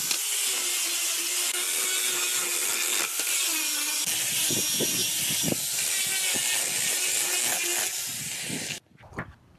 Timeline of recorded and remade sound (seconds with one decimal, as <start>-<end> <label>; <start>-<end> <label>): 0.0-9.6 recorded